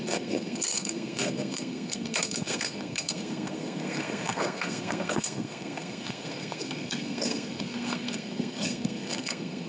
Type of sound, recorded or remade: remade